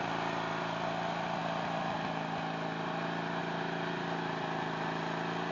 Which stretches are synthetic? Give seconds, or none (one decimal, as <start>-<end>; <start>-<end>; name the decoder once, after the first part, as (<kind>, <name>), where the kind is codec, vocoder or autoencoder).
none